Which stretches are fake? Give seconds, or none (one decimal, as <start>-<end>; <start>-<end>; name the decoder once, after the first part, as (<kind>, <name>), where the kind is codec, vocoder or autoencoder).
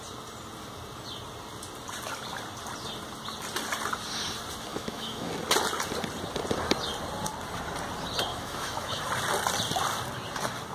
4.7-5.3 (autoencoder, DAC-VAE); 8.3-9.0